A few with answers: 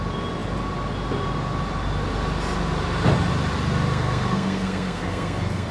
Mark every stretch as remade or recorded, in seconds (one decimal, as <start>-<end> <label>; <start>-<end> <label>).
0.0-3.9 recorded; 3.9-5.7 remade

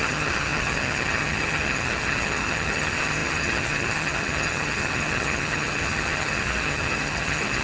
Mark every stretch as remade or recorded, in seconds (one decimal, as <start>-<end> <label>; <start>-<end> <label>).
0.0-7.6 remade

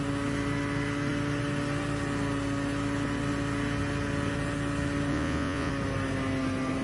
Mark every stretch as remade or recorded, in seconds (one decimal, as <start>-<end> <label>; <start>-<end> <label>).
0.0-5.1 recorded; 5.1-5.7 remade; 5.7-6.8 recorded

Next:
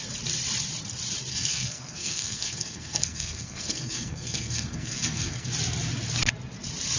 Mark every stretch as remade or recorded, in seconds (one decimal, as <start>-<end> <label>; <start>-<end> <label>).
0.0-1.3 recorded; 1.3-5.5 remade; 5.5-7.0 recorded

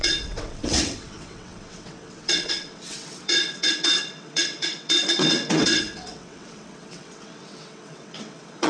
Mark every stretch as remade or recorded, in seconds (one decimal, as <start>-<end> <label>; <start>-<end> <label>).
0.0-8.7 remade